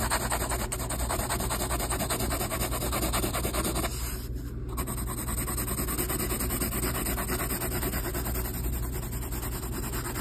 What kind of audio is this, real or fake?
real